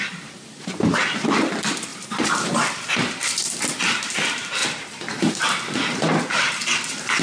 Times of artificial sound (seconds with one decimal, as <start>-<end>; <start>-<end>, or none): 1.9-2.5; 4.6-5.3